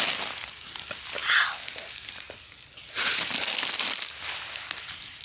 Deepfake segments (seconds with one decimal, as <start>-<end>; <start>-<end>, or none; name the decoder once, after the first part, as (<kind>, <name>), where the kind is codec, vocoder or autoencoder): none